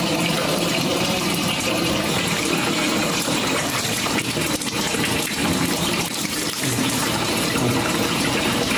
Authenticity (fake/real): fake